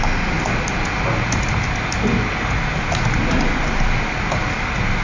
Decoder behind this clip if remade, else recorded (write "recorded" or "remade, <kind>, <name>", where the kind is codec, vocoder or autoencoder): recorded